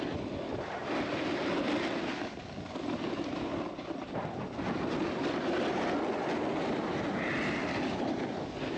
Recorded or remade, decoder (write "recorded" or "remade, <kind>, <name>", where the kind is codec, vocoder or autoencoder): recorded